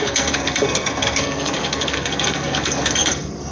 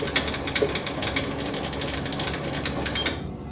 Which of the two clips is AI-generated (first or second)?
first